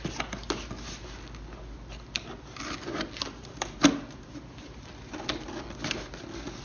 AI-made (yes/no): no